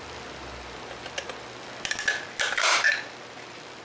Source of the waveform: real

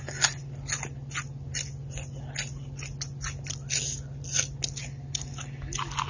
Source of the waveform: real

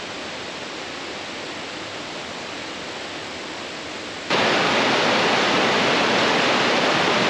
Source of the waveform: real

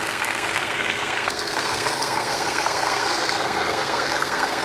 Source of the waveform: fake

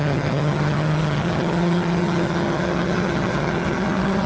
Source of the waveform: fake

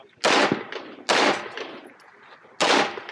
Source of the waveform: real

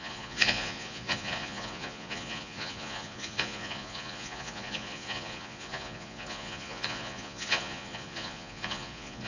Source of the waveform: fake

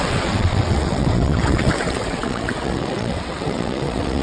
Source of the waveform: fake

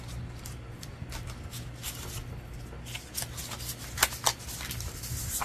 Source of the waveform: real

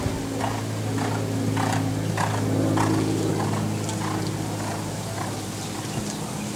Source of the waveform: real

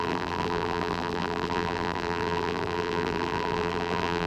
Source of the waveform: fake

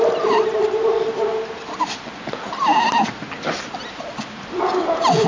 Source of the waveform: real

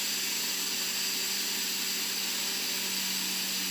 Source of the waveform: real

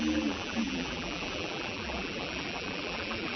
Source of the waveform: fake